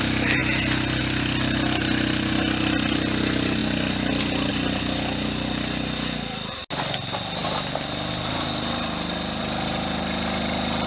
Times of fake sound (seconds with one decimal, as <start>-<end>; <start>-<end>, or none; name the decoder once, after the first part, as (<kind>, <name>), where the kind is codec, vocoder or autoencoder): none